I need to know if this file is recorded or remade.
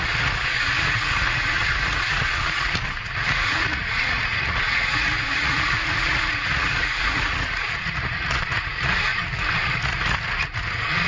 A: remade